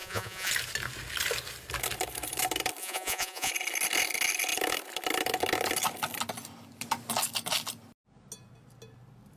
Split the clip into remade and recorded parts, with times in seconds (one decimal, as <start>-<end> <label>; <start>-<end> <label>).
0.0-0.5 remade; 0.5-2.8 recorded; 2.8-3.5 remade; 3.5-9.4 recorded